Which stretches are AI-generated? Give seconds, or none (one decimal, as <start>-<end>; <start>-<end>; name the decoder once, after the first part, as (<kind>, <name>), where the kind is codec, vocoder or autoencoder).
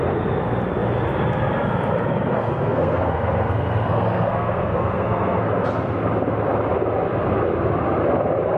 2.3-5.5 (codec, SNAC)